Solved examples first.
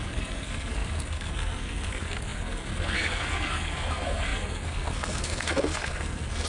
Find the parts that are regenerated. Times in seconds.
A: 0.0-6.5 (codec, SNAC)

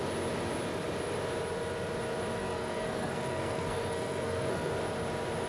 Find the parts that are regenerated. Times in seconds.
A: 2.4-4.7 (codec, SNAC)